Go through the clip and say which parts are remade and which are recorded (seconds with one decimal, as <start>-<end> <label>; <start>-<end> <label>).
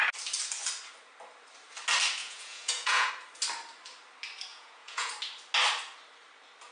0.0-2.2 recorded; 2.2-3.1 remade; 3.1-4.5 recorded; 4.5-5.1 remade; 5.1-6.7 recorded